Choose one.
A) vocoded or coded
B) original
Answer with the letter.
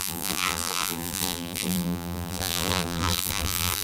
A